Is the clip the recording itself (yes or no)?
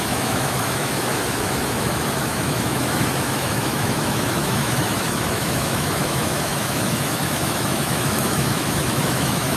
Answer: no